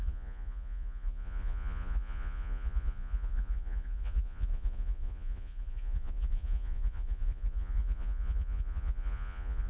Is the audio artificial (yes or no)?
yes